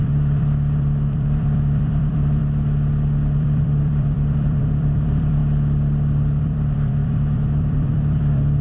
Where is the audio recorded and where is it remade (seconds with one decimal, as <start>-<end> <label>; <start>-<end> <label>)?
0.0-2.4 remade; 2.4-3.4 recorded; 3.4-5.4 remade; 5.4-6.4 recorded; 6.4-8.6 remade